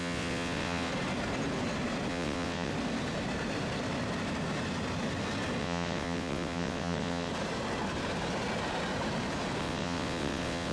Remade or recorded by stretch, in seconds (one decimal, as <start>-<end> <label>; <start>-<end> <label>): 0.0-0.9 remade; 0.9-2.1 recorded; 2.1-2.7 remade; 2.7-5.6 recorded; 5.6-7.3 remade; 7.3-9.6 recorded; 9.6-10.7 remade